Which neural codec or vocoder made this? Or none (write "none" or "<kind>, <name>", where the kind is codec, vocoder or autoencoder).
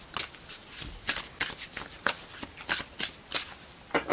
none